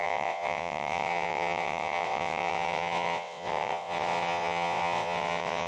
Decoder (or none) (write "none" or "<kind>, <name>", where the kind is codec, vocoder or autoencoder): vocoder, WaveNeXt